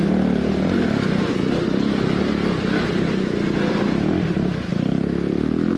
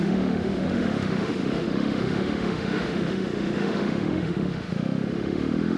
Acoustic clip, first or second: first